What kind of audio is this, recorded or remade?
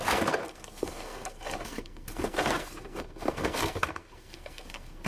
remade